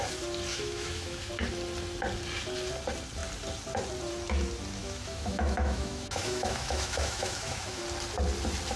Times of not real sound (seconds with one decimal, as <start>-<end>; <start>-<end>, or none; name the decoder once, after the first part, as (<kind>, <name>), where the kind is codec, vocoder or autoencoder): 0.5-1.3 (autoencoder, DAC-VAE); 4.8-7.8